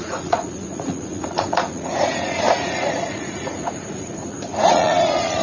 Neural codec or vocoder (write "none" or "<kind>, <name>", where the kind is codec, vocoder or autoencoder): vocoder, Vocos